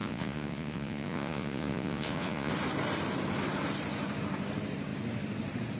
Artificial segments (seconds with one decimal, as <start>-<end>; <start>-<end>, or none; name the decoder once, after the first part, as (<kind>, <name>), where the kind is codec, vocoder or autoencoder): 0.0-2.5 (vocoder, Vocos)